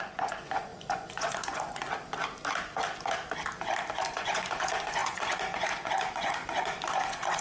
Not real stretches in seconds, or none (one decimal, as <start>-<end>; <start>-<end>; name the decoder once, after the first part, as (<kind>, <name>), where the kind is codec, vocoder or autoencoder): 0.0-1.8 (vocoder, Vocos); 4.1-7.4